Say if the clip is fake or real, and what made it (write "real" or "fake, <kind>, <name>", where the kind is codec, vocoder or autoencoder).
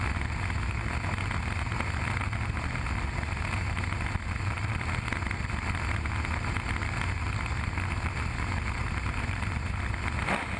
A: real